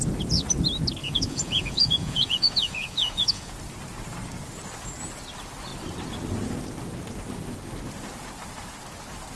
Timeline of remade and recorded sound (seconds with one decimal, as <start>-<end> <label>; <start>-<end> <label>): 0.0-1.0 recorded; 1.0-3.5 remade; 3.5-9.4 recorded